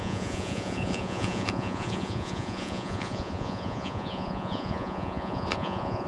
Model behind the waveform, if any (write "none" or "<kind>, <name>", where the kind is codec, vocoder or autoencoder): vocoder, Vocos